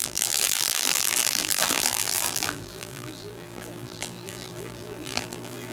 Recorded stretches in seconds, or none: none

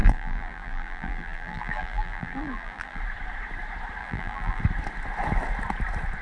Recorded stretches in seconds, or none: 3.0-4.0; 4.6-6.2